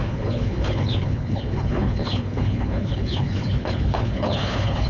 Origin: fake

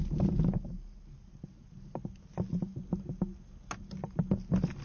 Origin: real